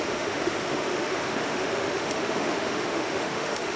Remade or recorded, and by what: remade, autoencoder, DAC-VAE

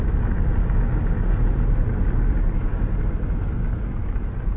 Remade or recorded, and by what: recorded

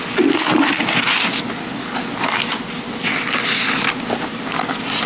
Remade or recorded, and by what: recorded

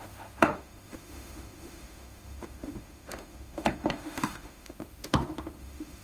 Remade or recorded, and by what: remade, autoencoder, DAC-VAE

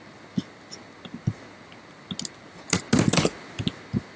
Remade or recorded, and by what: recorded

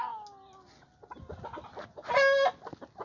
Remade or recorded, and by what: recorded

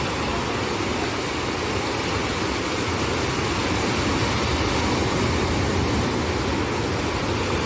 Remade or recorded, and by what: recorded